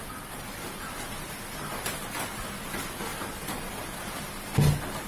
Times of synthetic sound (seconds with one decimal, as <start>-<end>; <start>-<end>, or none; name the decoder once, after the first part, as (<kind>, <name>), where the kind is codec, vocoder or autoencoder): none